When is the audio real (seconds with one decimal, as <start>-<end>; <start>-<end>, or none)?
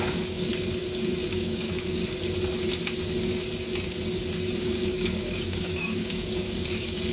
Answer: 0.5-1.3; 2.0-4.6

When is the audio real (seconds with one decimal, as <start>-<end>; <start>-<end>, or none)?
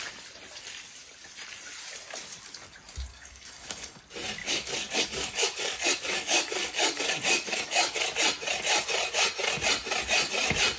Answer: 0.0-3.1; 4.0-4.4; 8.0-10.8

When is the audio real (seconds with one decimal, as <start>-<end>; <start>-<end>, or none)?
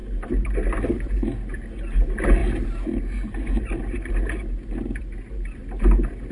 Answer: 0.0-6.3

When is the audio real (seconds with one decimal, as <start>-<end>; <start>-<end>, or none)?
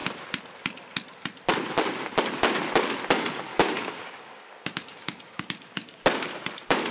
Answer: 0.0-3.5; 6.0-6.9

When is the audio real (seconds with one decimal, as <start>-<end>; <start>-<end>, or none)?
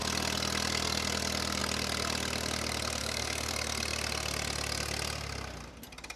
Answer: 0.0-3.0; 3.5-6.2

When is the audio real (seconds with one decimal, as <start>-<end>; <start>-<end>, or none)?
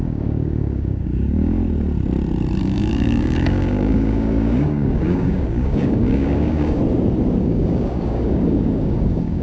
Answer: 1.6-2.6; 6.8-7.4